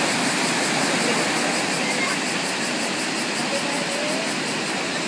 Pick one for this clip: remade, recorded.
recorded